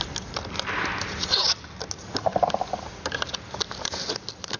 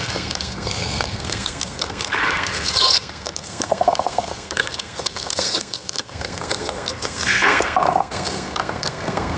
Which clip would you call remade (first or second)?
second